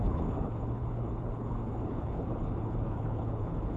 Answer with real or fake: fake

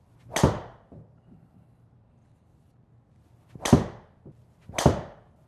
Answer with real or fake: real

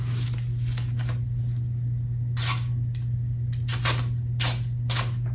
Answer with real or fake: real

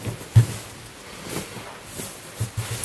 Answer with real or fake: real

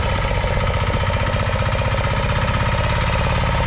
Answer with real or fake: real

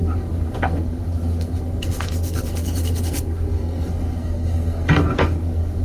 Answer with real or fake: fake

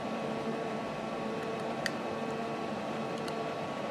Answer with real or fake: fake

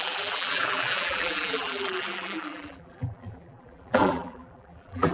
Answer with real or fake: fake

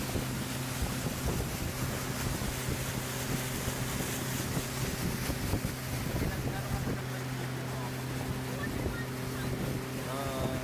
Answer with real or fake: real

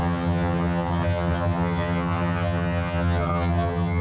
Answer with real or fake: fake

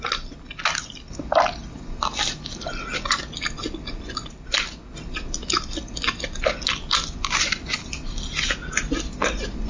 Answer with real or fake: real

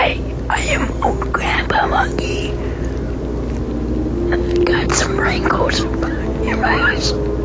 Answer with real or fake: real